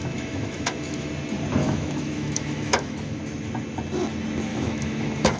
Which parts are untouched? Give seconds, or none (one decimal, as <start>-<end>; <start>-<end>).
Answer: 1.1-1.6; 3.2-4.5